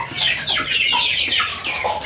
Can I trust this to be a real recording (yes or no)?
yes